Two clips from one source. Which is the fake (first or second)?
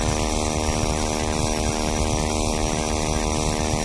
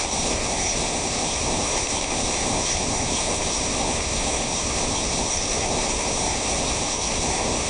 second